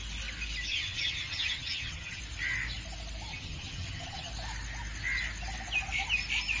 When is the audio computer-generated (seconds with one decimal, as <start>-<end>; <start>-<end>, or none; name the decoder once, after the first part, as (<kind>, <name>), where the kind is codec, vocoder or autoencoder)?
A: 0.7-2.2 (vocoder, HiFi-GAN); 3.3-4.3